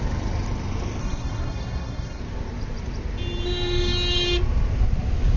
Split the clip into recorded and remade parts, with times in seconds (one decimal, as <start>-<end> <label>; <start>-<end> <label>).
0.0-1.0 recorded; 1.0-2.2 remade; 2.2-5.4 recorded